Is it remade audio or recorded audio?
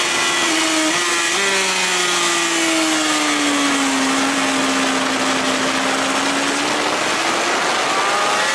recorded